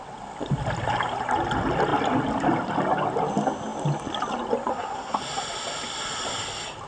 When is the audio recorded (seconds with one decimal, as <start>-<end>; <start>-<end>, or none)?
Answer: 0.0-4.7; 5.2-6.9